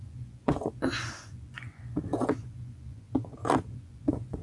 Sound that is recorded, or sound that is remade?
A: remade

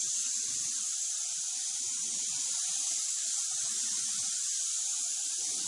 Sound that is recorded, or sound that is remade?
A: remade